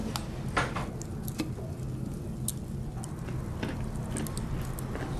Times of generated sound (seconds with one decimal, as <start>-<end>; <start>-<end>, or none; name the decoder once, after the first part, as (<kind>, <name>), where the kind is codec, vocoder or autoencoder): none